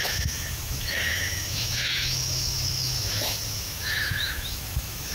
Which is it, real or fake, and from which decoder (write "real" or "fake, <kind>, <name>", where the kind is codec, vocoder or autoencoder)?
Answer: fake, autoencoder, DAC-VAE